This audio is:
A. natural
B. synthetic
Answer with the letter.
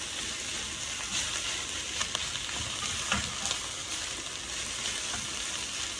A